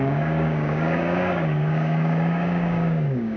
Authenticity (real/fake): fake